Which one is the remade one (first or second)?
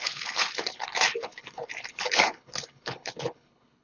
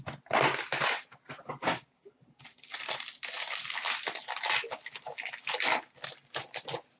first